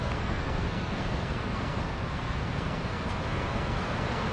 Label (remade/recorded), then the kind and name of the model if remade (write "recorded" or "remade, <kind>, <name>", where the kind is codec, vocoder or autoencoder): remade, codec, SNAC